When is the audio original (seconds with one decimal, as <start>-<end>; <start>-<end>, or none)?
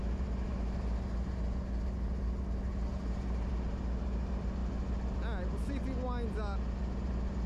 0.0-7.5